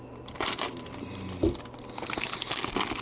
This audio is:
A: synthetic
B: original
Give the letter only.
B